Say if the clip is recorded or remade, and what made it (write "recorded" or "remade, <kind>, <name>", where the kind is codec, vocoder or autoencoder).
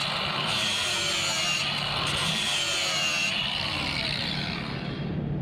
remade, vocoder, BigVGAN v2